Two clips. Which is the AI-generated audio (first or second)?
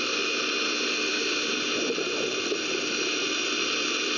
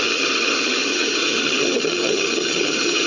second